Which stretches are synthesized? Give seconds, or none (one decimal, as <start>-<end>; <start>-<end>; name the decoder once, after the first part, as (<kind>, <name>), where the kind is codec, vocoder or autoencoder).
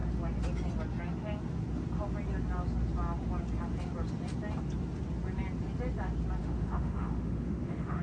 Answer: 6.4-8.0 (autoencoder, DAC-VAE)